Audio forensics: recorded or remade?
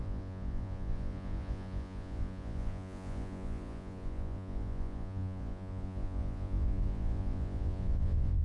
remade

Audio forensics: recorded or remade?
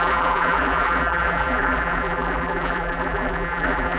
remade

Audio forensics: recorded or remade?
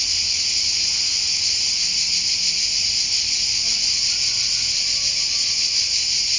recorded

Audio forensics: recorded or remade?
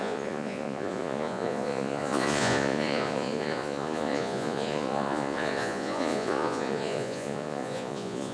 remade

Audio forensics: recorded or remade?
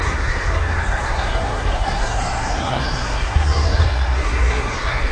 remade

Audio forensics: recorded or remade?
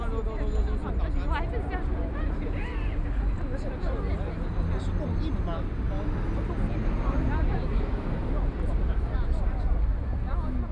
recorded